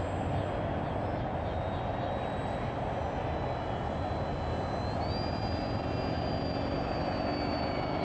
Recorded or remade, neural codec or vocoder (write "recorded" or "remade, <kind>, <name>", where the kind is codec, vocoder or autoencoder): recorded